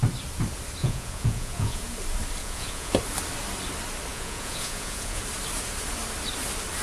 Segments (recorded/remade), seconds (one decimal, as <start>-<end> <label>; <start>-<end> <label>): 0.0-0.8 recorded; 0.8-1.8 remade; 1.8-2.4 recorded; 2.4-2.9 remade; 2.9-4.1 recorded; 4.1-5.2 remade; 5.2-6.8 recorded